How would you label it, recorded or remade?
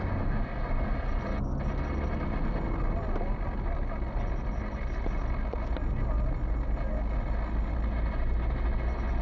recorded